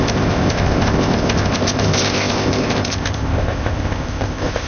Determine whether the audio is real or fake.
fake